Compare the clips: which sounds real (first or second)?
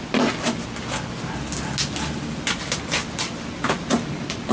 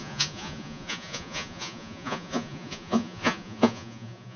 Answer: first